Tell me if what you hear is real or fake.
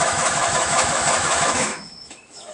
fake